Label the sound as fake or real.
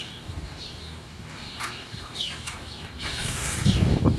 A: fake